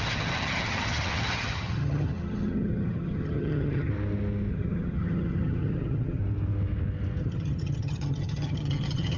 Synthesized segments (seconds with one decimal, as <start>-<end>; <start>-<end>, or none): 0.0-3.9; 4.5-6.2; 7.2-9.2